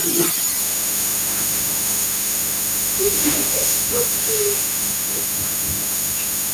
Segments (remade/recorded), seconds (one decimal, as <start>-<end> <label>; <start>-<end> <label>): 0.0-0.6 recorded; 0.6-6.5 remade